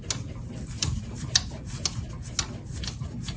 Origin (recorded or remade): recorded